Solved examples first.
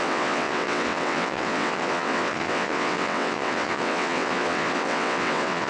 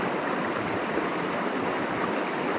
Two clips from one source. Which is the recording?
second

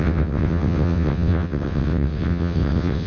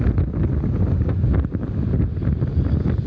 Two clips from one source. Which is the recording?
second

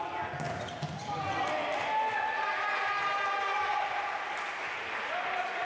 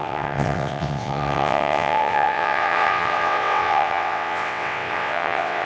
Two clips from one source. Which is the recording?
first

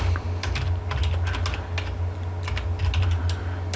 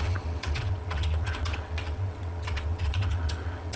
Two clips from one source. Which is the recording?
first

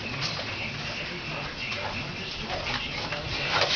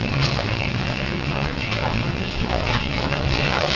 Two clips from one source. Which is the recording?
first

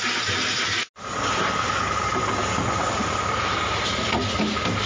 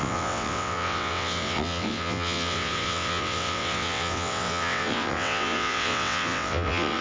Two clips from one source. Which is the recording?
first